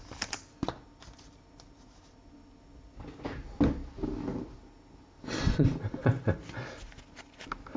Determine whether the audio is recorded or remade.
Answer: recorded